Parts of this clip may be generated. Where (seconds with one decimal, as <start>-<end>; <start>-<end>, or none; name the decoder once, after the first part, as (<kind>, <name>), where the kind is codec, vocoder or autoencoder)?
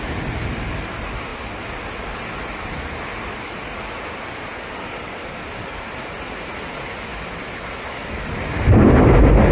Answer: none